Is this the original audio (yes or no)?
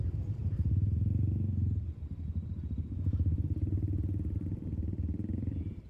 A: yes